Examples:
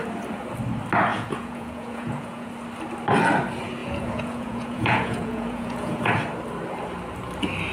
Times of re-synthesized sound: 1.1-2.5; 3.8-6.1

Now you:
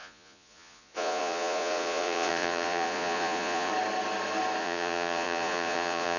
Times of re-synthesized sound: 0.0-3.7; 4.6-6.2

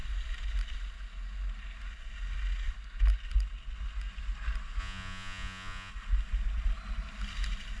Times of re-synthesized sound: 4.8-5.9

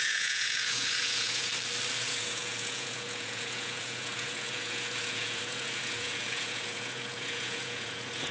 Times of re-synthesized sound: 0.0-1.5; 2.0-8.3

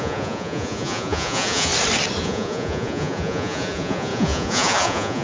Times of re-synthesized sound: 0.0-1.7; 2.2-5.2